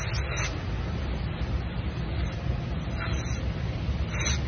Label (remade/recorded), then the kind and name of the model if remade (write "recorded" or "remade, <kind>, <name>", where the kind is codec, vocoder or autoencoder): recorded